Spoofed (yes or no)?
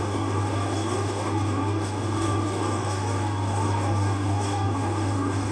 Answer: yes